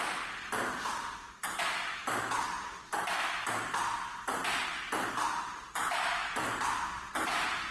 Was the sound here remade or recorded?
recorded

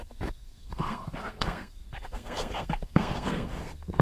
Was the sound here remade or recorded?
remade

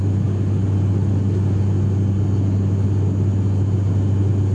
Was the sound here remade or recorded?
recorded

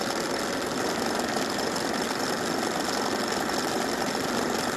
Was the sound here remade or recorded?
recorded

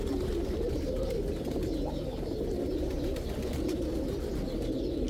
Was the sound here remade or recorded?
recorded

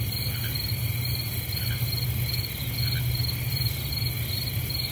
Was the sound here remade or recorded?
recorded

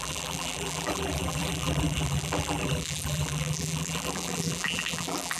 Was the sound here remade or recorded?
remade